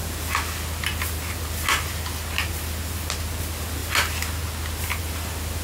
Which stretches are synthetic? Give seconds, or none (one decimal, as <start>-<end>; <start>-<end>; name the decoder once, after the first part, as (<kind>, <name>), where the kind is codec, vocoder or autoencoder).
none

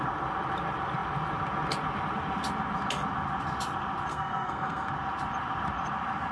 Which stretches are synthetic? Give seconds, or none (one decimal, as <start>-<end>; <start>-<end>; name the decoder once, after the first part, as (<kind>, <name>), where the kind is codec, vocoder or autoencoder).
4.1-4.9 (codec, SNAC)

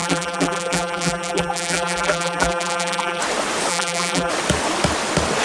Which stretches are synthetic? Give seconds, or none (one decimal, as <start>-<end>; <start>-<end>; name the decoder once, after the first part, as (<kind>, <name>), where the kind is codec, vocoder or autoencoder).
0.0-3.2 (vocoder, BigVGAN v2); 3.7-4.3

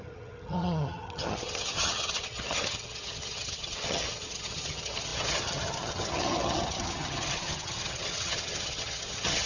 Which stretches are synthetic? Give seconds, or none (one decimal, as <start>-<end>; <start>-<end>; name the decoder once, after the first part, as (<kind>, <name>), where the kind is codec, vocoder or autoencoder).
0.0-9.5 (vocoder, HiFi-GAN)